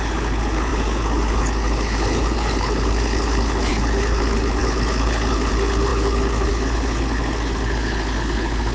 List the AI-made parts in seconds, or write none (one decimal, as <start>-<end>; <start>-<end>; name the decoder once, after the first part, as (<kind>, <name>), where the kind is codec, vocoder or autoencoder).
0.0-8.7 (codec, HILCodec)